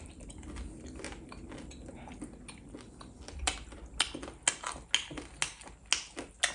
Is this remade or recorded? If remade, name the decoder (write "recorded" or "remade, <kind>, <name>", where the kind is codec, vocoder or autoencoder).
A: recorded